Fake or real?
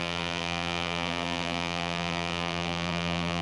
fake